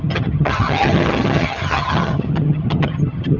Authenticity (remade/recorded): remade